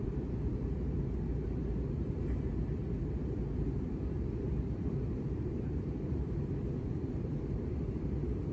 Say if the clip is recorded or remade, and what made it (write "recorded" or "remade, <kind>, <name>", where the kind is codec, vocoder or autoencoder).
remade, vocoder, BigVGAN v2